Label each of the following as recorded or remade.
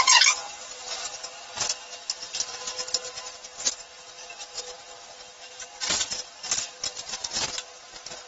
recorded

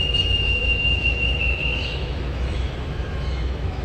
remade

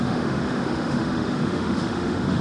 remade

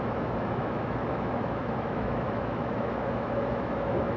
remade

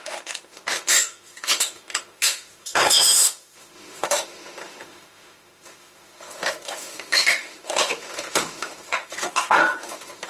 remade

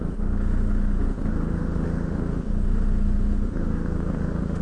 remade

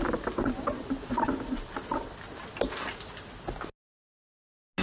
recorded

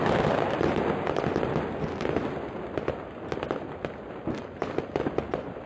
recorded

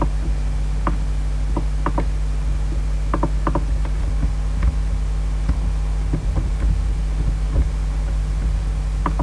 recorded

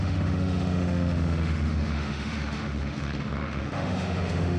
remade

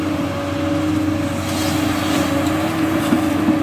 recorded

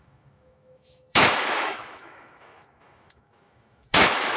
remade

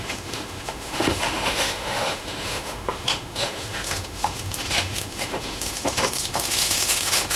remade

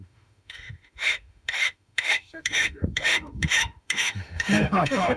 remade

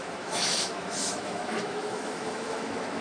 remade